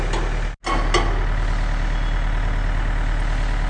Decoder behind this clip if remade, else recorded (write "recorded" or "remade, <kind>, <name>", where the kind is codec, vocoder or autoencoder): recorded